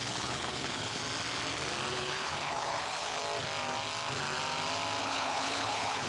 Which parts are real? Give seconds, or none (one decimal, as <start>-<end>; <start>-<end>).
1.0-1.9; 3.2-5.0